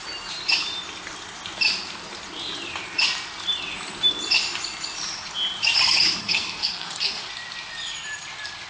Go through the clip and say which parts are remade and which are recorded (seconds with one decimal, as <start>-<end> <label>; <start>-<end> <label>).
0.0-6.2 recorded; 6.2-7.2 remade; 7.2-8.7 recorded